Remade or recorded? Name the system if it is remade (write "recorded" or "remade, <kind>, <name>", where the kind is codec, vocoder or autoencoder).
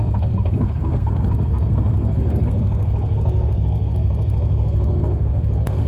remade, codec, SNAC